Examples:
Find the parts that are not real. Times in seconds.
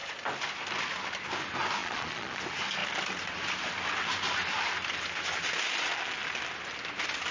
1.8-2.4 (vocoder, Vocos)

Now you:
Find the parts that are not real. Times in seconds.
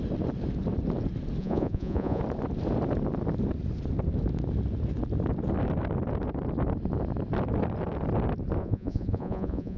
1.4-2.2 (vocoder, Vocos); 8.6-9.8